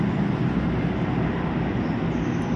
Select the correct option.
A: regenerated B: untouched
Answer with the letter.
B